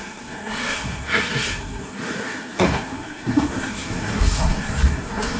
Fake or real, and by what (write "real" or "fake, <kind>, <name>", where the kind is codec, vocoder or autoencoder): fake, codec, SNAC